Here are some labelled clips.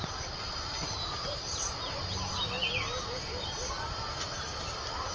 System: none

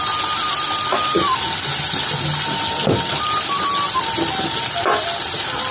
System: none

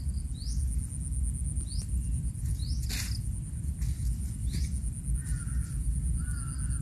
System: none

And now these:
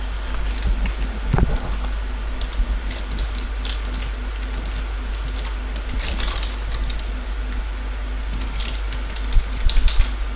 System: vocoder, BigVGAN v2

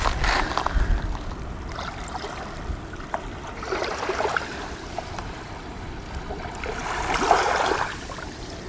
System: vocoder, BigVGAN v2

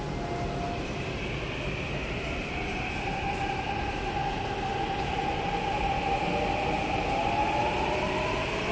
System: none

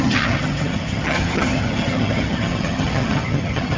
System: vocoder, HiFi-GAN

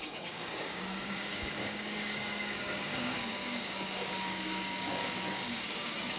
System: codec, DAC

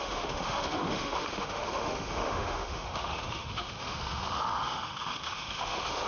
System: autoencoder, DAC-VAE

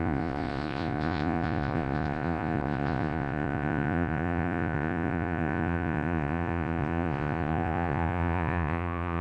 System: vocoder, Vocos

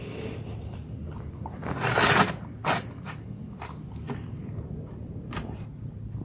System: vocoder, BigVGAN v2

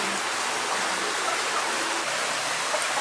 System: none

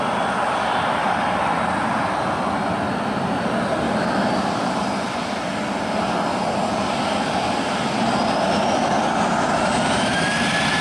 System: none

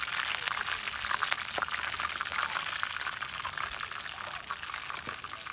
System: none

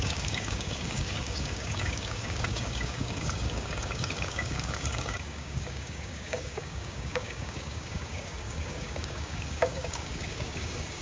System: codec, DAC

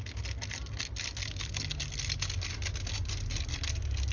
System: none